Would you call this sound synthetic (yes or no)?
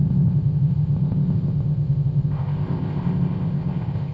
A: yes